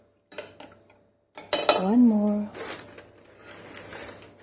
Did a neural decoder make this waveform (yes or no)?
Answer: no